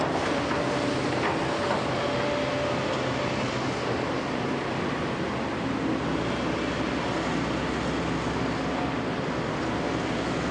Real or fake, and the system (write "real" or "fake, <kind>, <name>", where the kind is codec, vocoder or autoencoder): real